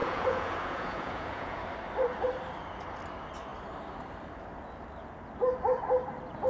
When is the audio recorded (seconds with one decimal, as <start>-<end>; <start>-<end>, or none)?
1.6-6.5